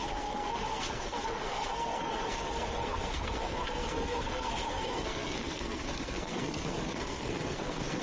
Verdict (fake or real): fake